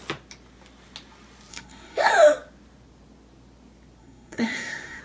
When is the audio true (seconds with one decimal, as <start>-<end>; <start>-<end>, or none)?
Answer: 0.0-1.5; 2.1-4.0